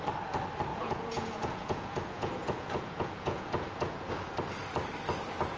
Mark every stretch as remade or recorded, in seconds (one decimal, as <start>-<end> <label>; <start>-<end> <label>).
0.0-0.7 recorded; 0.7-4.1 remade; 4.1-5.6 recorded

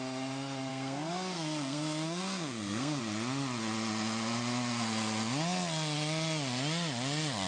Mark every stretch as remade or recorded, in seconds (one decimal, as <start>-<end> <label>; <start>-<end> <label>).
0.0-0.7 recorded; 0.7-3.0 remade; 3.0-7.5 recorded

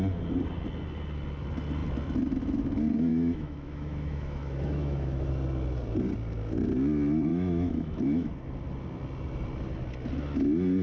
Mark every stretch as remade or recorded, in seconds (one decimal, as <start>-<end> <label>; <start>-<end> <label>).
0.0-3.1 recorded; 3.1-5.3 remade; 5.3-7.3 recorded; 7.3-8.3 remade; 8.3-10.8 recorded

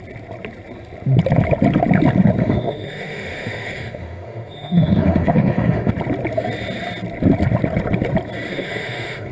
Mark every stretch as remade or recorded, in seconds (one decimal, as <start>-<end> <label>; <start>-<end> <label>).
0.0-2.4 recorded; 2.4-5.9 remade; 5.9-8.5 recorded; 8.5-9.3 remade

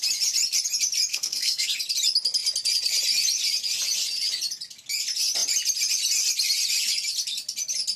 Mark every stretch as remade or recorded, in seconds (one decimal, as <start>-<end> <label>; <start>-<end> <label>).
0.0-1.1 recorded; 1.1-1.7 remade; 1.7-8.0 recorded

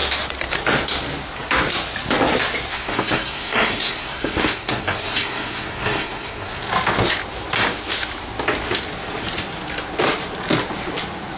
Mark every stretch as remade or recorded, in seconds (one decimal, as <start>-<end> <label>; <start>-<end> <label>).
0.0-2.7 recorded; 2.7-6.6 remade; 6.6-11.4 recorded

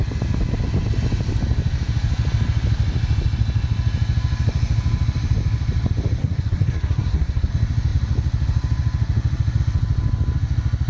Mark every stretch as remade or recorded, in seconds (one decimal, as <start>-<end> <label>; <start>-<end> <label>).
0.0-6.2 recorded; 6.2-7.5 remade; 7.5-10.9 recorded